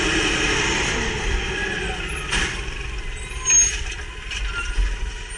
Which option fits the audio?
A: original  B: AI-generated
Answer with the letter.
A